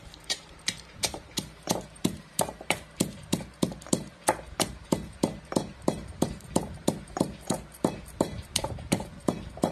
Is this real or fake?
fake